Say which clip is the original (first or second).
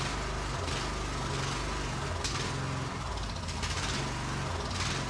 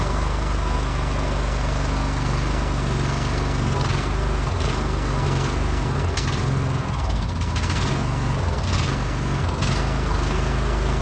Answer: first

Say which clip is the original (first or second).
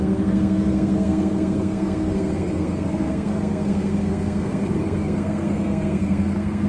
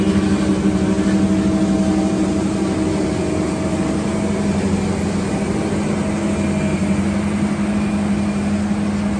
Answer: second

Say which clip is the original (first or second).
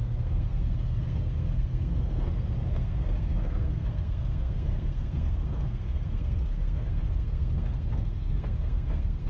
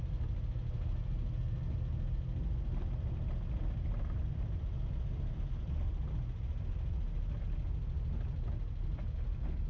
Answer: second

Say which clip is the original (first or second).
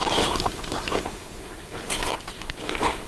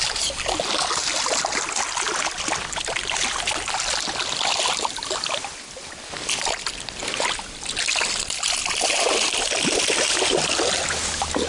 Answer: second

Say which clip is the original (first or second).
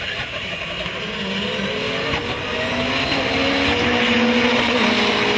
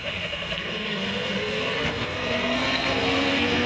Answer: first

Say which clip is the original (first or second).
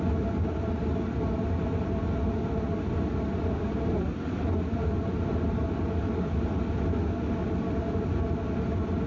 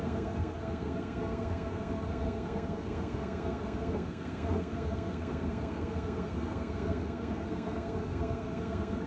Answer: first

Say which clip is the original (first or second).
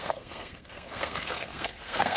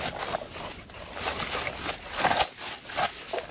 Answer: second